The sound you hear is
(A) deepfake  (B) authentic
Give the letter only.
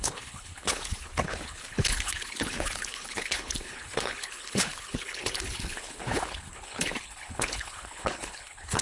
A